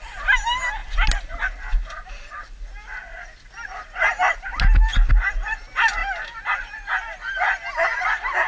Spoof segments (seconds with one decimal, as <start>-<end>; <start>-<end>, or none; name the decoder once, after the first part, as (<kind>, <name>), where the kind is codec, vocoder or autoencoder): none